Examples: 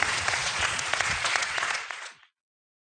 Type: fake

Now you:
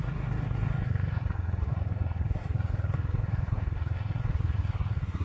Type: fake